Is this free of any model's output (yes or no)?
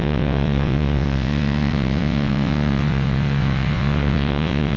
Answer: no